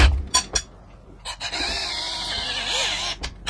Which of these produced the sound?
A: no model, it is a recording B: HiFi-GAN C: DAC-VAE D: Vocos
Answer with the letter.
A